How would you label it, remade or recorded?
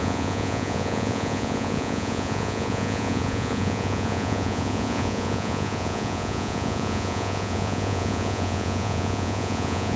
remade